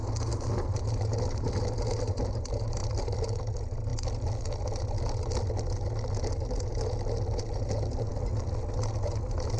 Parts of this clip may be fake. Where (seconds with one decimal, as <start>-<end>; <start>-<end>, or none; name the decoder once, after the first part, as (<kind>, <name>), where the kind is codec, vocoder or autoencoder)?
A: none